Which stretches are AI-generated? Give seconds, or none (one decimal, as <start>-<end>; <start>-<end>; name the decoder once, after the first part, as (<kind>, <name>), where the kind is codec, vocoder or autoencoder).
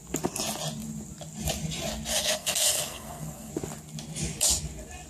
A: 2.1-3.5 (codec, SNAC)